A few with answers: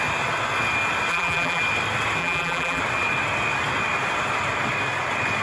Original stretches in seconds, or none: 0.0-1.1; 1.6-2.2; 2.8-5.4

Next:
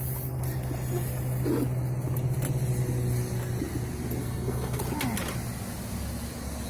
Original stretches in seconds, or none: 0.0-4.2; 4.8-6.7

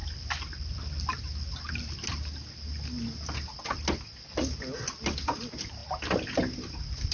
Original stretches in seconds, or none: 0.0-7.1

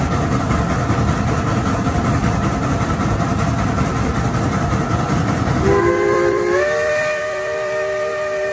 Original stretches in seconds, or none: 3.3-4.5

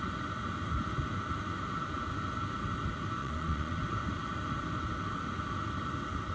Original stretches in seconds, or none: 0.0-3.2; 3.8-6.3

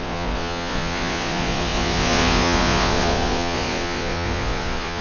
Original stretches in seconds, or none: none

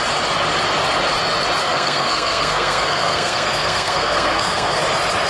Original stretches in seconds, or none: 0.0-1.6; 4.8-5.3

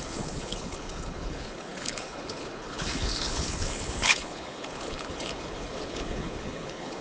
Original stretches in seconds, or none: none